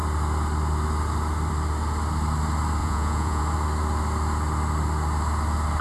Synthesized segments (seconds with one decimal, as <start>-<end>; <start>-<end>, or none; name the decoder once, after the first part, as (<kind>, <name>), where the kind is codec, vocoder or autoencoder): 2.8-3.4 (vocoder, Vocos)

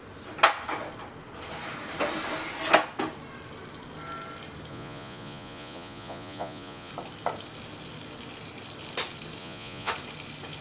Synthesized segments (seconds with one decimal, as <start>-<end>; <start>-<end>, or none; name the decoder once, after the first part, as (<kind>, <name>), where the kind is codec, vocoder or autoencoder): 4.7-6.9 (vocoder, Vocos); 9.4-9.9

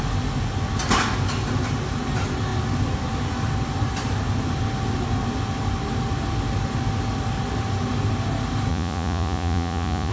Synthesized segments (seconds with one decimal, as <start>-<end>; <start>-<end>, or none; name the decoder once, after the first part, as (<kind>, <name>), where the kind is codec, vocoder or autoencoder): 8.7-10.1 (vocoder, Vocos)